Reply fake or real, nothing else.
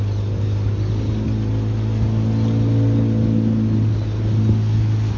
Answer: real